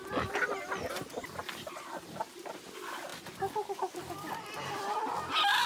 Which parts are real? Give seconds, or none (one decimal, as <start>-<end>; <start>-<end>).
0.0-1.4; 2.5-5.7